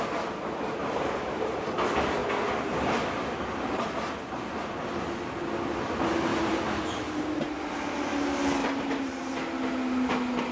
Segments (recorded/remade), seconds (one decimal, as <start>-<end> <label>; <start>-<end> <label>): 0.0-0.8 recorded; 0.8-1.6 remade; 1.6-6.3 recorded; 6.3-7.5 remade; 7.5-8.6 recorded; 8.6-9.3 remade; 9.3-10.5 recorded